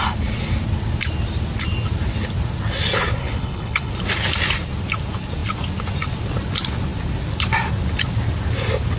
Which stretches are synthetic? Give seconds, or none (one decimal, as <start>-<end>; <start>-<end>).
3.2-3.9